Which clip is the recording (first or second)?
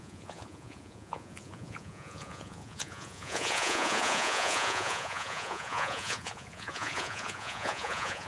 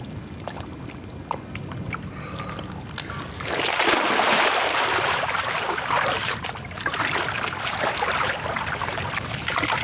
second